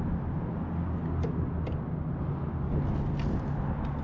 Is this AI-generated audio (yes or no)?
no